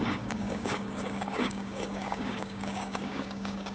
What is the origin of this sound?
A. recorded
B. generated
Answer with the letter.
B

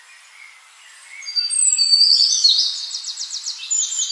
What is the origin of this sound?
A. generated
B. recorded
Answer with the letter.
B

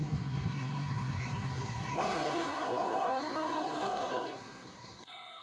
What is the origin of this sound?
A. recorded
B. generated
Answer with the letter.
B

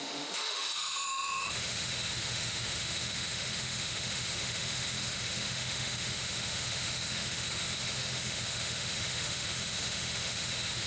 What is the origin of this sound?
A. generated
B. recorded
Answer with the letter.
A